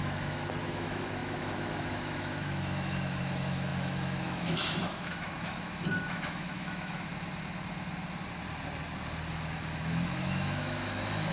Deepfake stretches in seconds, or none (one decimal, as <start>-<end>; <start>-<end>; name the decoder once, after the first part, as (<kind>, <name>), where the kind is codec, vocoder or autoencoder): 0.0-7.1 (autoencoder, DAC-VAE); 9.3-11.3